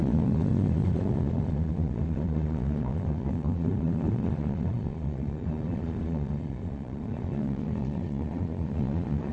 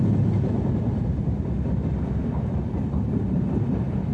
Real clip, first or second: second